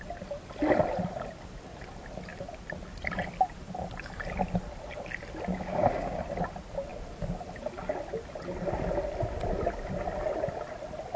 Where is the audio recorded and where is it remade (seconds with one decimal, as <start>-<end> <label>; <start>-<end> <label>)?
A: 0.0-5.5 recorded; 5.5-6.2 remade; 6.2-11.2 recorded